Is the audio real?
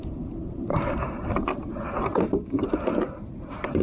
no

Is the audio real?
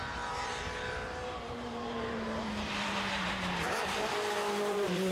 no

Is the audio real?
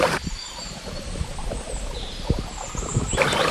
no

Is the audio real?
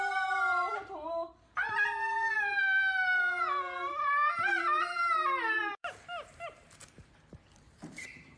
no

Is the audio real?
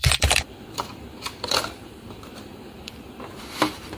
no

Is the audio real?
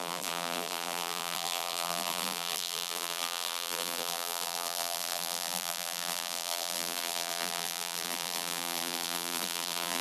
no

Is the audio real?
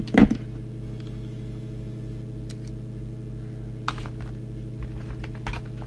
yes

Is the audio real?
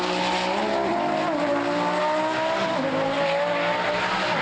yes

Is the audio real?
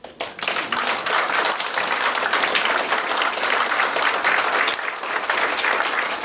yes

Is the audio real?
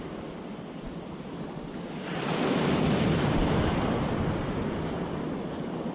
no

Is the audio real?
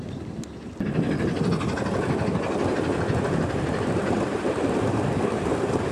yes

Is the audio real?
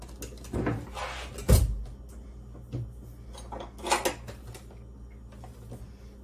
yes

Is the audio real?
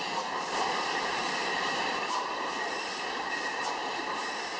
no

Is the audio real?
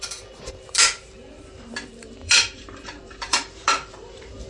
no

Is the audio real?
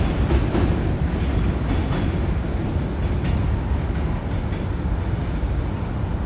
yes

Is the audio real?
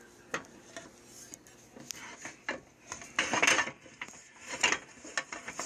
yes